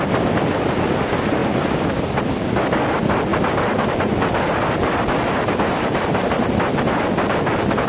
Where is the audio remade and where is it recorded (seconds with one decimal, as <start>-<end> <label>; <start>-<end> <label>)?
0.0-7.9 recorded